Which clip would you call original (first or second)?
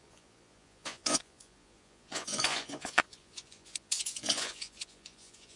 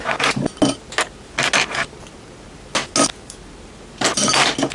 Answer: second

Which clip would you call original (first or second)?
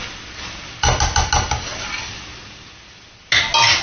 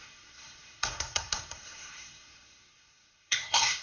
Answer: first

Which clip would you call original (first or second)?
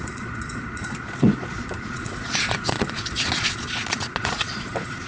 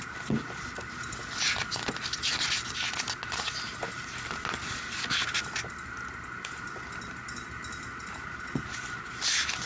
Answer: second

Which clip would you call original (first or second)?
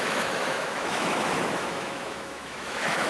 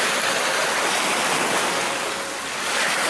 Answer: second